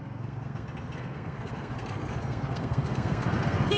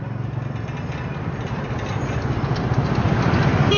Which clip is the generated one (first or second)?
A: first